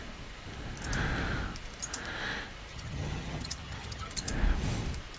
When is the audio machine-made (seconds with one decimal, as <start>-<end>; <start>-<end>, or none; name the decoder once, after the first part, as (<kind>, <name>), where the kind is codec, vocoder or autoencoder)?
2.7-4.1 (vocoder, HiFi-GAN)